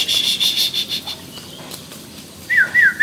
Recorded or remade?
recorded